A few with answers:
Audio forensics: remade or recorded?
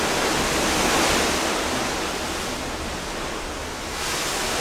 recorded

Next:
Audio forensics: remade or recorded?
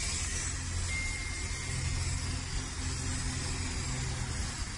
recorded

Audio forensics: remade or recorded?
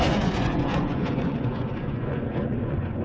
remade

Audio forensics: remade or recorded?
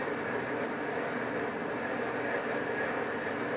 recorded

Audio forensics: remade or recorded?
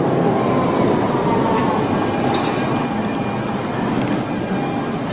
recorded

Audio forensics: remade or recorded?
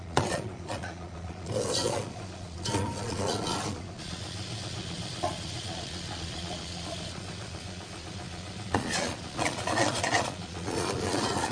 remade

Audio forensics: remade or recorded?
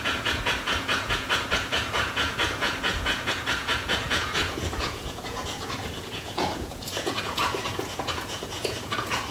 remade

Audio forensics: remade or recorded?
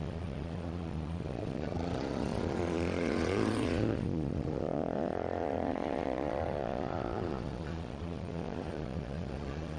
remade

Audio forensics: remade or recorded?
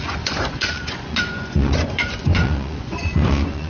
remade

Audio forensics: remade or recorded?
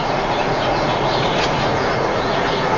remade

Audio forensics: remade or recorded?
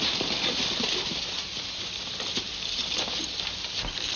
recorded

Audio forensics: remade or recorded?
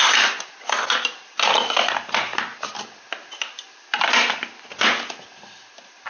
recorded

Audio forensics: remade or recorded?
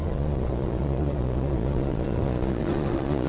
remade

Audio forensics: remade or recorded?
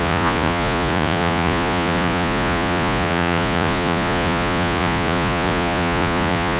remade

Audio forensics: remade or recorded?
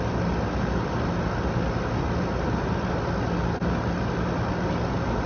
recorded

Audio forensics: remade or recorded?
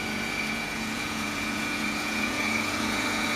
remade